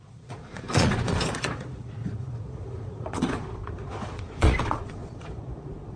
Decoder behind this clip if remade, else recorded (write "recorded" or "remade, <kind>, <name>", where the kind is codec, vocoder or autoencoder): remade, vocoder, Vocos